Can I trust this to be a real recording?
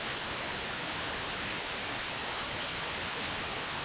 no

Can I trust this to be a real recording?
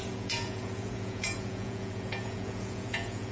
no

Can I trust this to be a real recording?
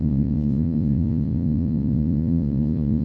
no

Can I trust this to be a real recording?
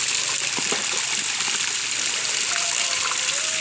yes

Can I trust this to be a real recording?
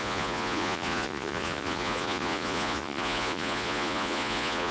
no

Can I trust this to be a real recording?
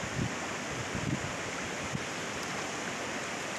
no